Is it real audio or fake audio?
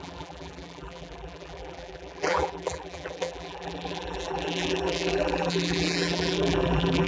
fake